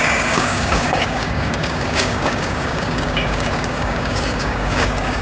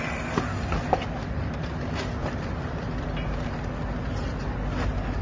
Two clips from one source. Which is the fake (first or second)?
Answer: first